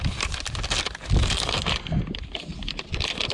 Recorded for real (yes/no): yes